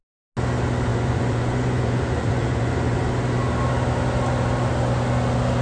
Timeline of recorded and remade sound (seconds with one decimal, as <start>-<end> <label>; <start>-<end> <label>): 0.0-0.9 recorded; 0.9-3.1 remade; 3.1-5.6 recorded